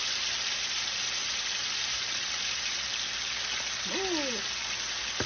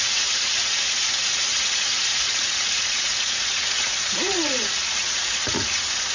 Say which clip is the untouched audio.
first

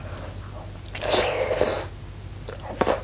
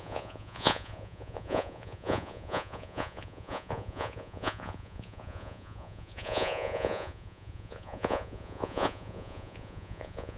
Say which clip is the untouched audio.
first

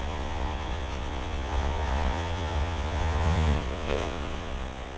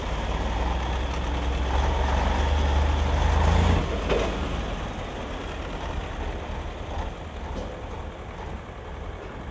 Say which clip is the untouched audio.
second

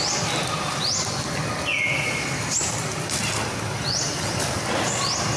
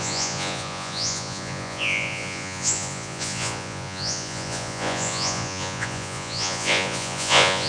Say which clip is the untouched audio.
first